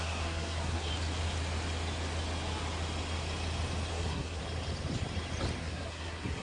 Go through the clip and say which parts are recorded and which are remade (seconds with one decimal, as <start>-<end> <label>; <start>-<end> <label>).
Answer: 0.0-0.9 remade; 0.9-3.9 recorded; 3.9-4.4 remade; 4.4-5.6 recorded; 5.6-6.4 remade